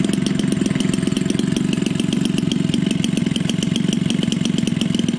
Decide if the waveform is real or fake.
real